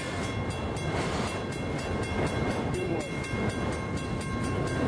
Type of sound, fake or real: real